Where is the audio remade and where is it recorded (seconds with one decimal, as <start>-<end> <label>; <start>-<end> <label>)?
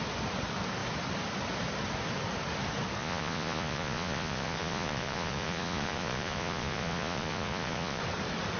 0.0-3.0 recorded; 3.0-8.0 remade; 8.0-8.6 recorded